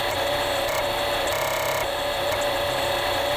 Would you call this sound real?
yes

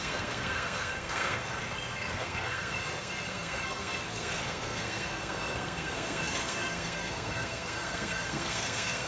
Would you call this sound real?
no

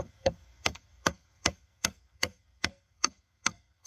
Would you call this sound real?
no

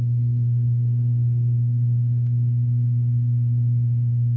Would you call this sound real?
no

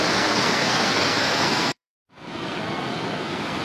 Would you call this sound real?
no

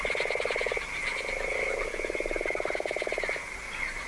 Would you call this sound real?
yes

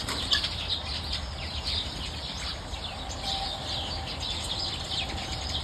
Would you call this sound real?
yes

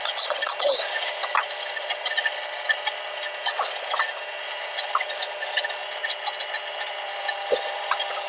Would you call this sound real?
yes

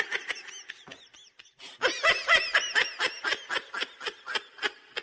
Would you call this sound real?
yes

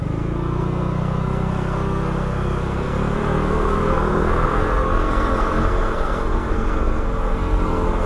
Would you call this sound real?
no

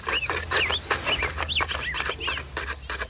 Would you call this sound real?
yes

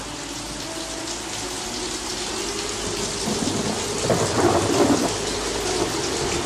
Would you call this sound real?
yes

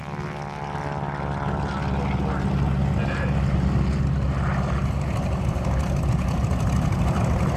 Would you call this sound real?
yes